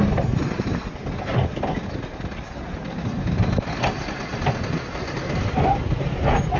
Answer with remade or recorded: recorded